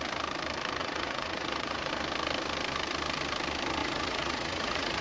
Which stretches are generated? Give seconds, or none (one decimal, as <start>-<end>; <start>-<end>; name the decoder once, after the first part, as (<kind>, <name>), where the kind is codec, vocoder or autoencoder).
0.8-1.9 (vocoder, Vocos); 3.8-5.0